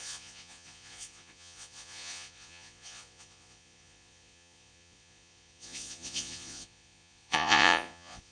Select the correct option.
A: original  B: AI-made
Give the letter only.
B